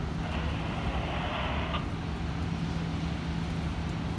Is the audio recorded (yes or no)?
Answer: yes